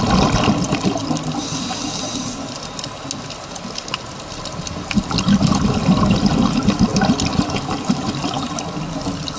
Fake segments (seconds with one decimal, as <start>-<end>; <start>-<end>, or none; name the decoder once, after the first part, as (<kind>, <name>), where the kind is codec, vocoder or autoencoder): none